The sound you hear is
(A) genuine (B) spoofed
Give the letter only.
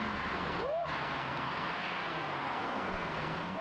B